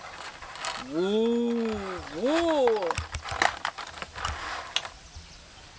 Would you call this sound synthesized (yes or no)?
no